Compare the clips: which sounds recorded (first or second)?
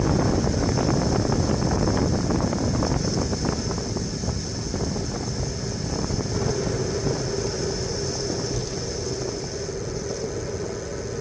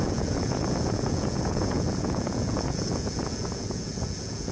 first